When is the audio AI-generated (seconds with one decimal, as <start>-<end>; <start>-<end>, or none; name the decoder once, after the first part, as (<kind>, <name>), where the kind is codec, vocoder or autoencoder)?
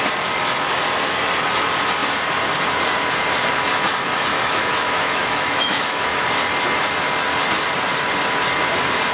4.3-6.2 (autoencoder, DAC-VAE)